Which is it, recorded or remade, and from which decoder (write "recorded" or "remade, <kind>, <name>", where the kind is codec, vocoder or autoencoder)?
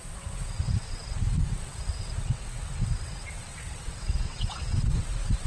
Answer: remade, vocoder, WaveNeXt